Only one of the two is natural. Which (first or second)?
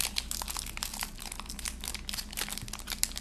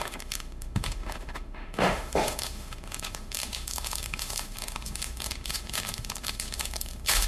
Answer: first